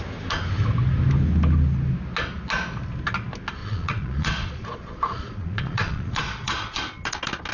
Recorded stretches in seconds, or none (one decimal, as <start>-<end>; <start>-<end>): 0.0-3.6; 6.8-7.5